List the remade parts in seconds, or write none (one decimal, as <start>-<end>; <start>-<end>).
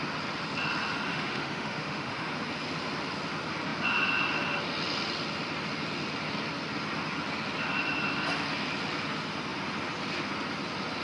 1.1-2.3